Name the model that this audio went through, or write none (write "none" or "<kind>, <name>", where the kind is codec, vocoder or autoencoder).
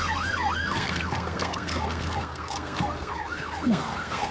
codec, SNAC